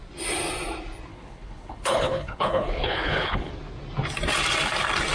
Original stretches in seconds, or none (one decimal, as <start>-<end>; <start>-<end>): 0.0-1.1; 3.5-5.1